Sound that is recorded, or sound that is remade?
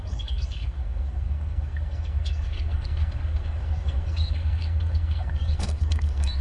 remade